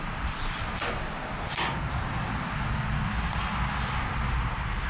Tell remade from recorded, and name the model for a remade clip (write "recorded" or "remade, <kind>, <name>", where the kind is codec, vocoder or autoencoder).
recorded